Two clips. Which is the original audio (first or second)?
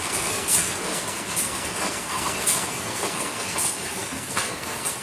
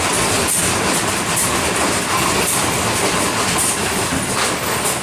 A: second